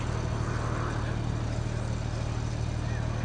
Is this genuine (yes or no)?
yes